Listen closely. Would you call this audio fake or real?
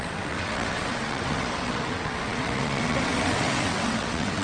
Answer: fake